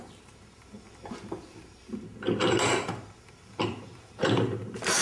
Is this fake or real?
fake